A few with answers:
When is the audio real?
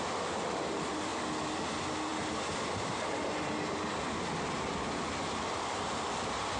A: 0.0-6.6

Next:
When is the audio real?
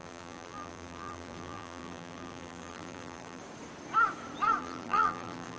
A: 3.4-4.6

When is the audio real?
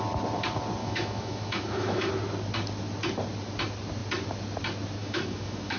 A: 0.0-0.8; 2.1-5.0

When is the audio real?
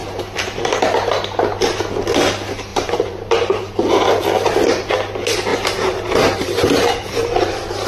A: 0.8-2.7; 3.9-5.5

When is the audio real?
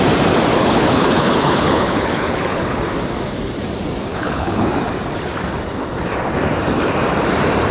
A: 0.0-0.5; 2.8-4.1; 4.7-7.7